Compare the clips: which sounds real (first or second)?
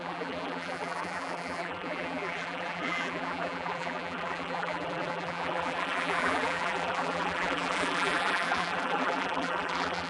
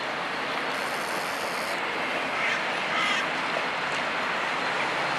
second